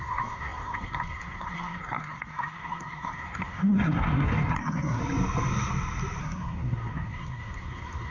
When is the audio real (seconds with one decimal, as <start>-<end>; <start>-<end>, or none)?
5.0-6.2